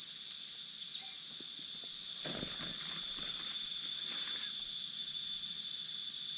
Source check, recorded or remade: recorded